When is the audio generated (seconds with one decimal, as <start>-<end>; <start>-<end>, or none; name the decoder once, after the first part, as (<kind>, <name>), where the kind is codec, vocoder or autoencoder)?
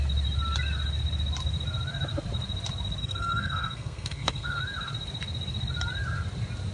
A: 3.0-4.6 (codec, SNAC)